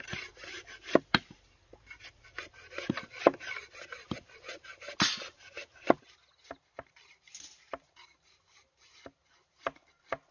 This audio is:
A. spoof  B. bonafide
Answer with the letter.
B